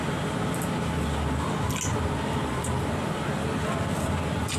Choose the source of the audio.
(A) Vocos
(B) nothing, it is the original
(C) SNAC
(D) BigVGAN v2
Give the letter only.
B